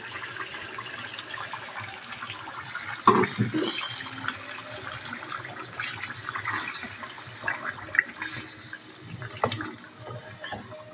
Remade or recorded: recorded